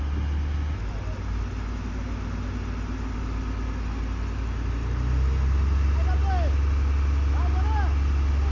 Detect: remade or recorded recorded